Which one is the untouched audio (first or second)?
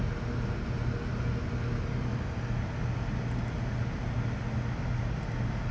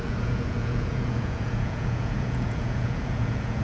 first